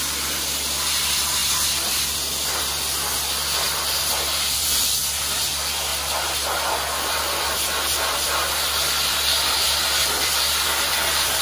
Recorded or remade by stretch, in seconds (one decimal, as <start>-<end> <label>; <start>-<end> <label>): 0.0-5.0 remade; 5.0-5.5 recorded; 5.5-11.4 remade